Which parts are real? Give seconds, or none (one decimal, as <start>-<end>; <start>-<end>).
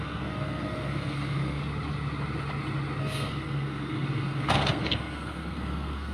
1.6-3.0